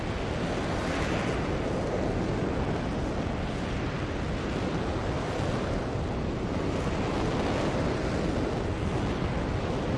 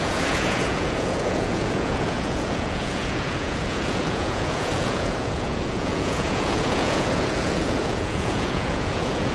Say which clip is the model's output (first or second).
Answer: second